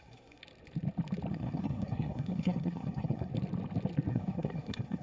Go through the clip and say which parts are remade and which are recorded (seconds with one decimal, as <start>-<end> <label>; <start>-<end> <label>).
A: 0.0-0.4 remade; 0.4-1.3 recorded; 1.3-3.3 remade; 3.3-4.1 recorded; 4.1-5.0 remade